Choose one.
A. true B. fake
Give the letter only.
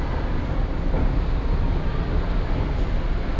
A